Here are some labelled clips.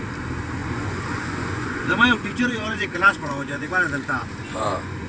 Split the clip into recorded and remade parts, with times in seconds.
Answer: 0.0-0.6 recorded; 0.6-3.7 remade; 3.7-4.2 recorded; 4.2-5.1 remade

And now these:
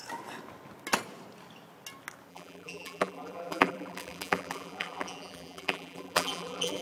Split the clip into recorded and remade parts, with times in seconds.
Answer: 0.0-2.3 recorded; 2.3-6.8 remade

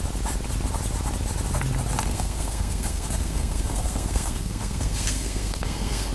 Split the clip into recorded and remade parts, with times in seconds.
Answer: 0.0-2.1 recorded; 2.1-6.1 remade

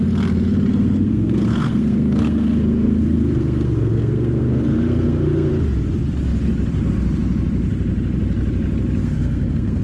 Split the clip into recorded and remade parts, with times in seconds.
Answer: 0.0-0.7 recorded; 0.7-5.5 remade; 5.5-9.0 recorded; 9.0-9.8 remade

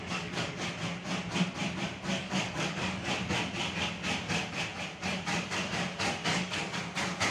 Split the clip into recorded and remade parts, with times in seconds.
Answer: 0.0-0.7 remade; 0.7-2.1 recorded; 2.1-3.1 remade; 3.1-6.3 recorded; 6.3-6.8 remade; 6.8-7.3 recorded

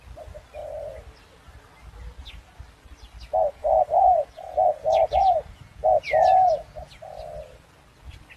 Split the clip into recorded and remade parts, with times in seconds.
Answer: 0.0-3.6 recorded; 3.6-6.8 remade; 6.8-8.4 recorded

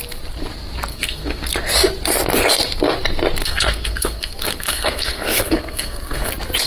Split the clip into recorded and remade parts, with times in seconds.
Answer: 0.0-0.9 recorded; 0.9-1.4 remade; 1.4-3.4 recorded; 3.4-6.3 remade; 6.3-6.7 recorded

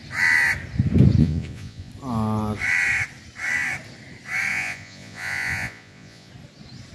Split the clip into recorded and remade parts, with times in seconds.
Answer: 0.0-1.2 recorded; 1.2-1.9 remade; 1.9-4.5 recorded; 4.5-6.3 remade; 6.3-6.9 recorded